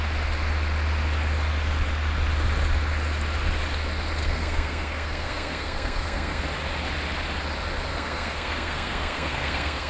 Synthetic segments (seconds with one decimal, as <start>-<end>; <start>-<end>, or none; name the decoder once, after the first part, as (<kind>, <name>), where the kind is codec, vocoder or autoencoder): 4.2-6.4 (codec, SNAC); 7.9-9.9